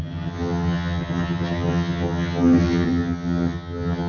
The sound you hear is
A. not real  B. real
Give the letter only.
A